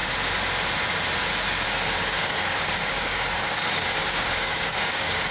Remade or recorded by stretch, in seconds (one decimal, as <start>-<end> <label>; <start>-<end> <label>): 0.0-2.0 recorded; 2.0-5.3 remade